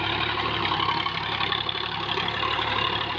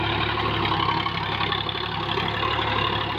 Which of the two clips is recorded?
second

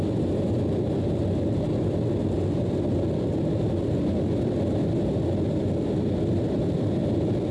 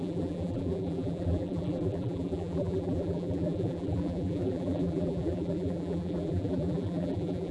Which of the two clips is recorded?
first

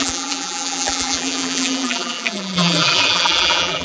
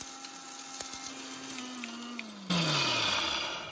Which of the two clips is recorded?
second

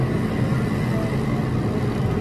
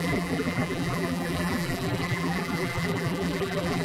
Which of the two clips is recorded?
first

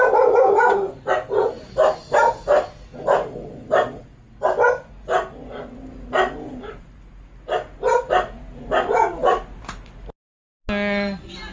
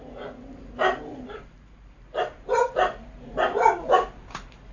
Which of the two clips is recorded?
first